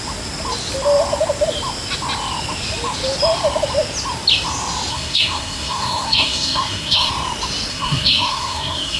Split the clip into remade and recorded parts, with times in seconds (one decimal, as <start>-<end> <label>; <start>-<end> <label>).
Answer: 0.0-4.9 recorded; 4.9-7.1 remade; 7.1-7.7 recorded; 7.7-9.0 remade